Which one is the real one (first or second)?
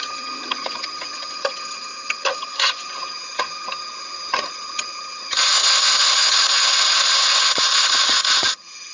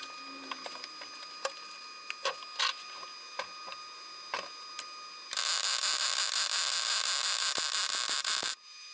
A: second